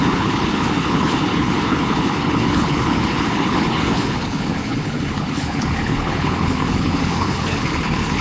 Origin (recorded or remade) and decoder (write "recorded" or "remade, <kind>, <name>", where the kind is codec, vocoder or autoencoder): remade, codec, HILCodec